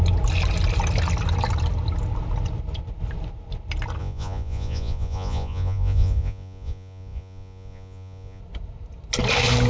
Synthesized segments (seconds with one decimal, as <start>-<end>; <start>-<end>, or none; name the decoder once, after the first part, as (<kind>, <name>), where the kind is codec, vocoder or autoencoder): 4.0-8.4 (vocoder, Vocos)